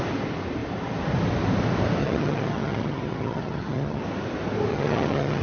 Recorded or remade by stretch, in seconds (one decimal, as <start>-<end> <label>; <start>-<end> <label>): 0.0-2.0 recorded; 2.0-4.0 remade; 4.0-4.7 recorded; 4.7-5.4 remade